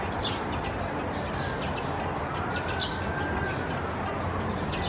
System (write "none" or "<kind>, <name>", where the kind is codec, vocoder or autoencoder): none